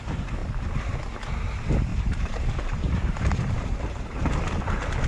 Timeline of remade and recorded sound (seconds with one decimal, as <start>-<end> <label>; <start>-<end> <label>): 0.0-1.9 recorded; 1.9-4.6 remade; 4.6-5.1 recorded